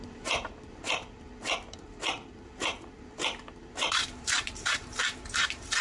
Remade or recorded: remade